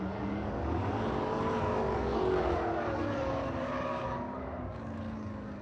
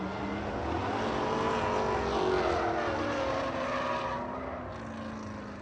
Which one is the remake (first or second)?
first